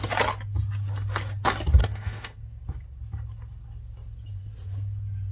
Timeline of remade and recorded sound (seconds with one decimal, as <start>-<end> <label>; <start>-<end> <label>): 0.0-1.8 recorded; 1.8-2.4 remade; 2.4-5.3 recorded